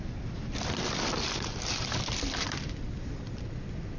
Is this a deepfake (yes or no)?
yes